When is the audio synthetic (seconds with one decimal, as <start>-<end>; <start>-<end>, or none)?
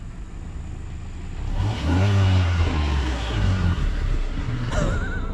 1.5-4.7